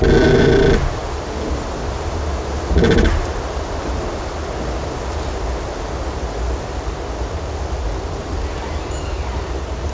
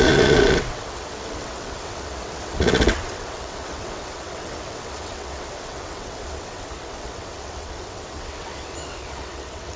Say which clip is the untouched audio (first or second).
first